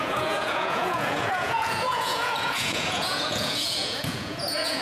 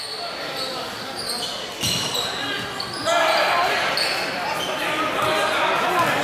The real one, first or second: second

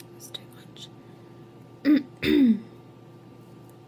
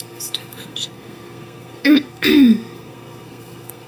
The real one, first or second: first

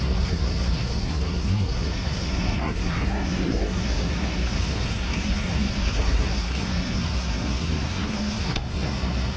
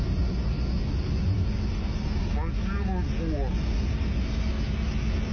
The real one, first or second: second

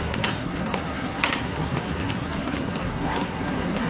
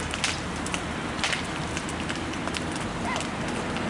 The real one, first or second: second